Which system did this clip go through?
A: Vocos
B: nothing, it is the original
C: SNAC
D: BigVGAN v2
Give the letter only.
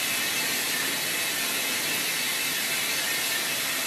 B